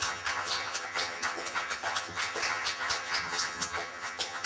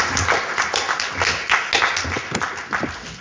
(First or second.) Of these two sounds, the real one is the second